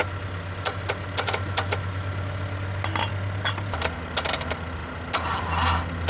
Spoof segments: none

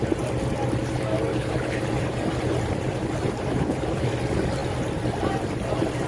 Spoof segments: 1.3-1.8 (codec, HILCodec); 3.5-4.1

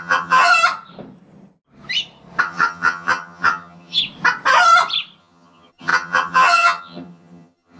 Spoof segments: 0.0-0.5 (vocoder, HiFi-GAN); 2.4-4.0; 5.2-7.8

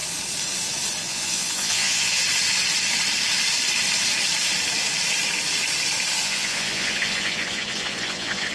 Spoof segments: 1.0-2.2 (vocoder, Vocos); 6.2-8.5

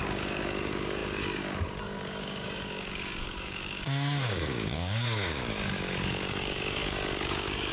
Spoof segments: 0.0-7.7 (codec, DAC)

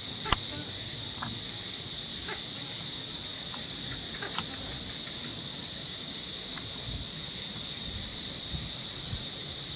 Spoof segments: 8.1-9.0 (vocoder, BigVGAN v2)